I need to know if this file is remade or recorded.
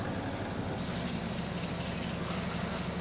recorded